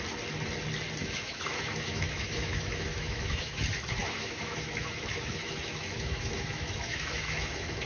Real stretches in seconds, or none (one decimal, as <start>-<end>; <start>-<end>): 0.0-1.0; 3.6-4.0